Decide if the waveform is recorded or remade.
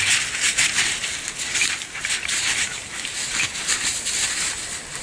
recorded